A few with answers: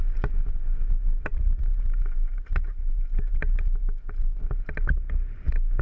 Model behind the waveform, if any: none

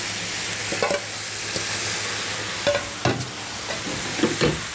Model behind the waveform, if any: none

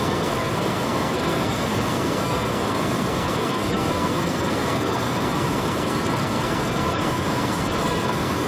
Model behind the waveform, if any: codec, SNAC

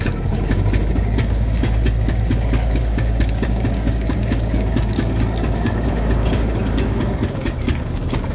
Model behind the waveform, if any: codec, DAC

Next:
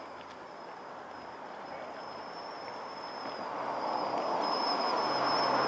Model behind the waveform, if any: none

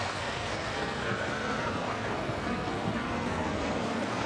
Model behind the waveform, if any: codec, SNAC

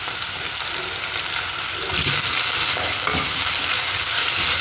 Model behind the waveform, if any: none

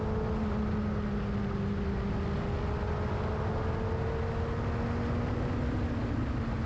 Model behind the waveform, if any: none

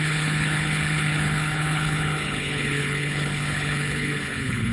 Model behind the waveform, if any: codec, HILCodec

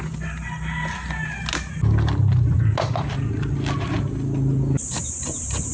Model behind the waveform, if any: none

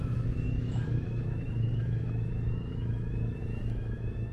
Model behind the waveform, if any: autoencoder, DAC-VAE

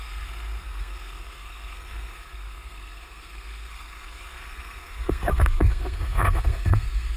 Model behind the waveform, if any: codec, SNAC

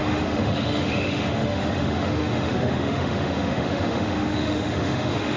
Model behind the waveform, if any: autoencoder, DAC-VAE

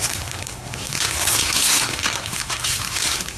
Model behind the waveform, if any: codec, SNAC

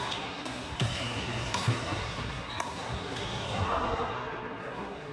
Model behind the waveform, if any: codec, SNAC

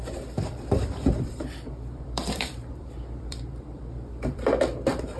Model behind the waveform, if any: vocoder, BigVGAN v2